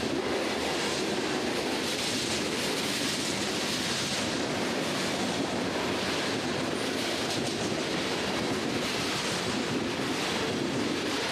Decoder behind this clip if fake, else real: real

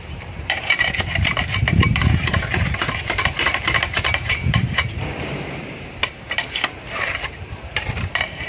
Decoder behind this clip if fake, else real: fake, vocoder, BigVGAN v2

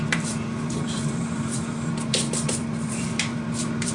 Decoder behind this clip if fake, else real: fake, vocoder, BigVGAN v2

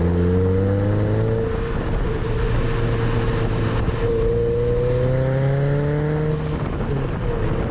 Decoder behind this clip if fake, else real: real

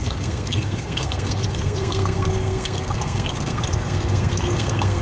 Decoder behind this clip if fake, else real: fake, codec, SNAC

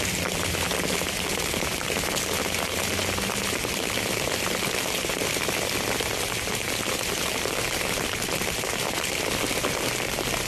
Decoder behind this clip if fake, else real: real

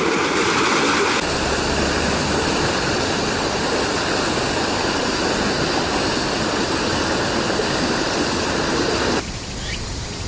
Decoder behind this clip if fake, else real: real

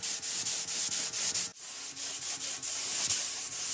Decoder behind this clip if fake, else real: fake, vocoder, BigVGAN v2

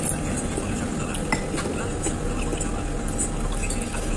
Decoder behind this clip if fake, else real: real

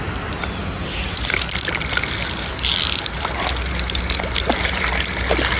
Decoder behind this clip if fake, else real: real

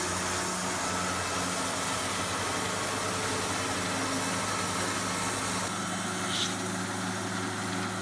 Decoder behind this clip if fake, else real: real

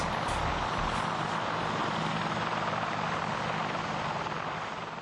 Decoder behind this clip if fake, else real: real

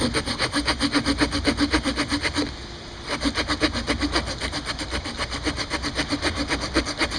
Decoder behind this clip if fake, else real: real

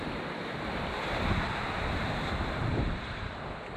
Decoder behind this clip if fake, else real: fake, vocoder, BigVGAN v2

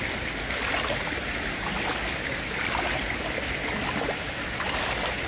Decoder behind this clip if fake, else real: real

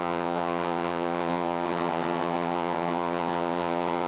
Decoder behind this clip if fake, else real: fake, vocoder, HiFi-GAN